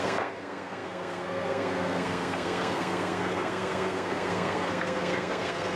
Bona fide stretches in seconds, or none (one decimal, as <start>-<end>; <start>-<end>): none